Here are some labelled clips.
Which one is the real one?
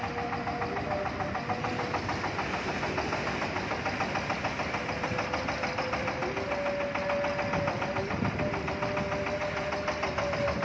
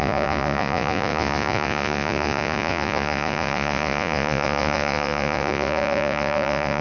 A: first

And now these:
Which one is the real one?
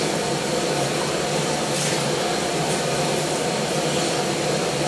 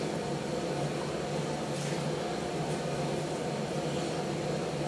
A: second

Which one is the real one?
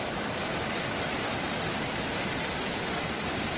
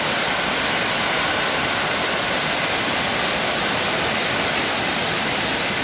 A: second